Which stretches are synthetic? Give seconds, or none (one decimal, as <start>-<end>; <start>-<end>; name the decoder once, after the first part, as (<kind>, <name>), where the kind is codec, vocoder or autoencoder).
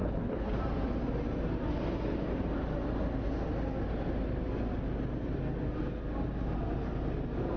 0.0-0.6 (codec, HILCodec)